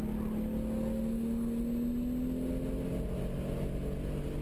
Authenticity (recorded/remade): recorded